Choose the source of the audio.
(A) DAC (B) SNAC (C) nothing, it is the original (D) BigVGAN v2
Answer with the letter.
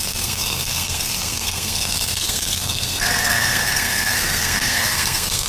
B